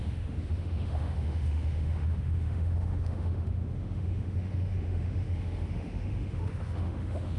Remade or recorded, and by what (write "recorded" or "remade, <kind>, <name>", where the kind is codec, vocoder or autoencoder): remade, autoencoder, DAC-VAE